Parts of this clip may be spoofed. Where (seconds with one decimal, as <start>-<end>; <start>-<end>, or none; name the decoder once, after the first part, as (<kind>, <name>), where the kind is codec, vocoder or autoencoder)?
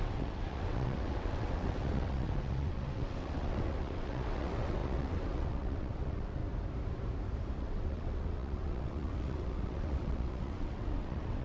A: 0.0-6.4 (vocoder, WaveNeXt); 7.6-11.4